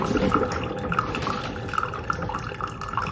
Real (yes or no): yes